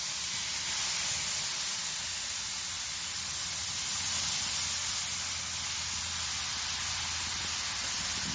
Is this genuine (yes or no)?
yes